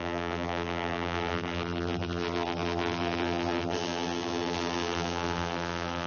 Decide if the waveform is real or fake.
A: fake